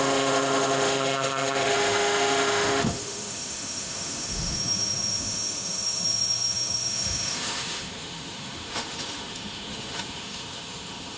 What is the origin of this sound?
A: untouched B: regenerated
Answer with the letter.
B